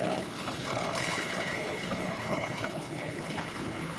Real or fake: fake